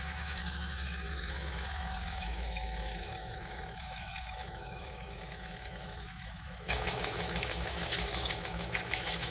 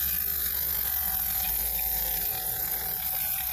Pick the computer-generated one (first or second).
first